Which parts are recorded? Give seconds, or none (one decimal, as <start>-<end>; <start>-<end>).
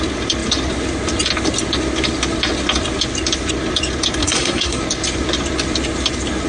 0.0-4.2; 4.8-6.5